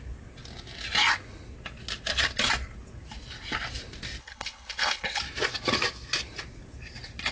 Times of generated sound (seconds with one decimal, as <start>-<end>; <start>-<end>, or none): 4.2-5.2